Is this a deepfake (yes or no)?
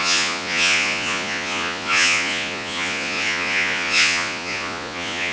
yes